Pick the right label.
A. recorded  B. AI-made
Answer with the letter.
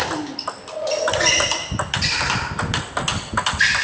A